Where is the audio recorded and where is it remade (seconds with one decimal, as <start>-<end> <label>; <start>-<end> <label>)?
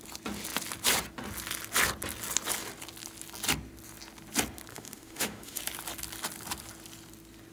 0.0-4.7 recorded; 4.7-5.6 remade; 5.6-7.5 recorded